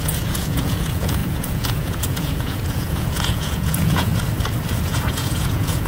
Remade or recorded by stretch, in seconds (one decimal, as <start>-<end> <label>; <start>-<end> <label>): 0.0-4.1 remade; 4.1-4.8 recorded; 4.8-5.9 remade